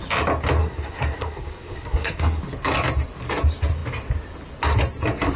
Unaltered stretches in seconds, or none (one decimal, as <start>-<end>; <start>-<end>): 0.0-0.6; 2.4-5.4